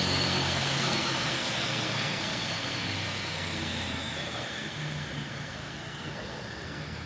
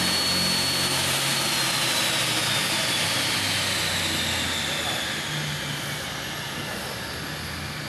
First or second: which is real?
second